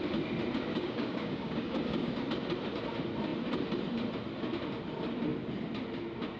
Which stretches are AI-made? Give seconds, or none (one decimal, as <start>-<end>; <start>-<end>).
0.7-2.1